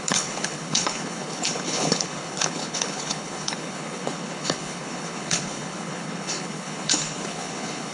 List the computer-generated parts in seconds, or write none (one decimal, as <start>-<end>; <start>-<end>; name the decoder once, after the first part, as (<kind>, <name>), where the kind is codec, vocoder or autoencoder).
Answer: 0.0-7.9 (codec, HILCodec)